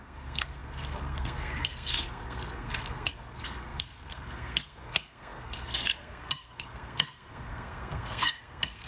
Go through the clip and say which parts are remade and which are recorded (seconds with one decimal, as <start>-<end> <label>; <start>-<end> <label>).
0.0-8.9 remade